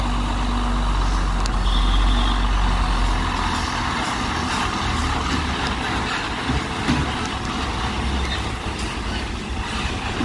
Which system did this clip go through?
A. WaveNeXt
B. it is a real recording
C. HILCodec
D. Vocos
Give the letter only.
B